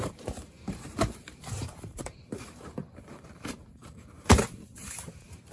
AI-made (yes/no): yes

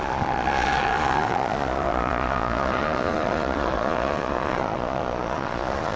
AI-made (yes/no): yes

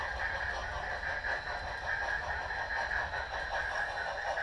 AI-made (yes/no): no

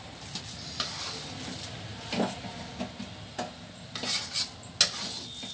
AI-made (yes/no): no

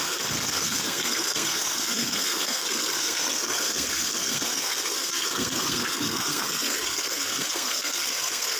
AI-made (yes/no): yes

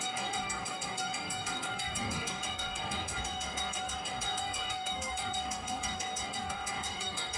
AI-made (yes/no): yes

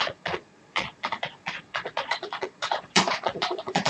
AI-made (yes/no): yes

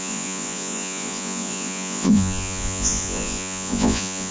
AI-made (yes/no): yes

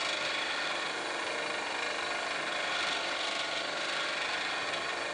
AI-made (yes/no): no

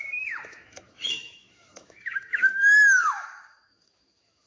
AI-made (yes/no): yes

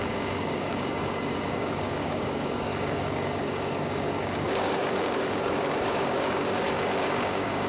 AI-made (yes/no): yes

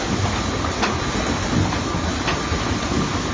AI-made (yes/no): no